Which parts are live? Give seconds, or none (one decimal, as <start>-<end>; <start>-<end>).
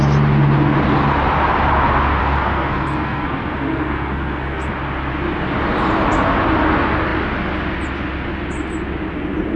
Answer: 0.0-2.2; 4.7-9.6